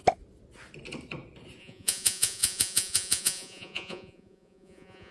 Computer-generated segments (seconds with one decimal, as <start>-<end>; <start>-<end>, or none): 1.6-5.1